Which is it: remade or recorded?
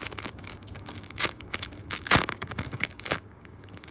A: remade